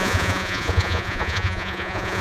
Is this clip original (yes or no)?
no